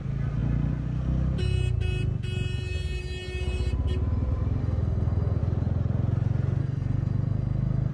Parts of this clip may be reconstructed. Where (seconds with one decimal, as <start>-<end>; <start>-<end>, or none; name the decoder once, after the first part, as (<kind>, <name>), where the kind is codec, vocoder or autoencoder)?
4.6-5.4 (codec, SNAC); 6.6-7.9